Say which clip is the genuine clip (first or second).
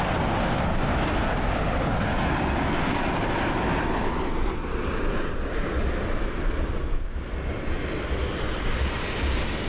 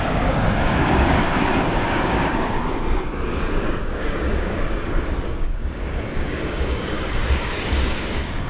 first